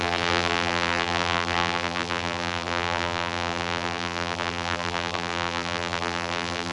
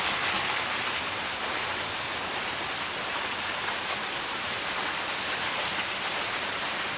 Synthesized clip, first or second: first